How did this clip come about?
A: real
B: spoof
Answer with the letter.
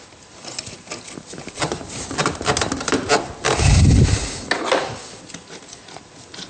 A